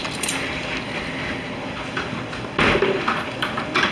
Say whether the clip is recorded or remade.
recorded